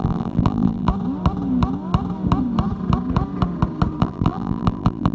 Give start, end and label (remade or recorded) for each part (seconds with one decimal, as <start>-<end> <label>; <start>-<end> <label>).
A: 0.0-0.9 remade; 0.9-4.0 recorded; 4.0-5.1 remade